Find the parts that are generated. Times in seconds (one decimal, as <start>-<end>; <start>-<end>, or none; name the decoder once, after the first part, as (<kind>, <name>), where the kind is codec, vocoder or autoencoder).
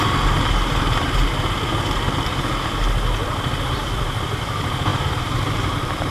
0.0-1.2 (vocoder, BigVGAN v2); 3.6-6.1